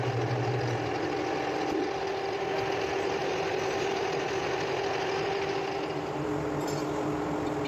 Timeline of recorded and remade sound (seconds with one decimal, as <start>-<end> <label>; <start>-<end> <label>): 0.0-7.7 recorded